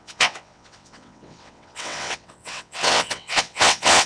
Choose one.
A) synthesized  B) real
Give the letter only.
A